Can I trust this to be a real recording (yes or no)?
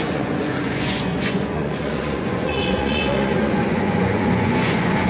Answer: no